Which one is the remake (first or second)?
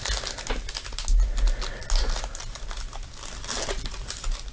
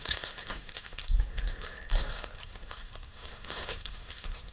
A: second